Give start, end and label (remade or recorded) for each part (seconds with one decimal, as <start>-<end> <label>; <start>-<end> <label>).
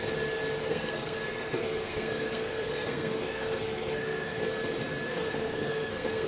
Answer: 0.0-0.6 recorded; 0.6-4.4 remade; 4.4-5.1 recorded; 5.1-6.3 remade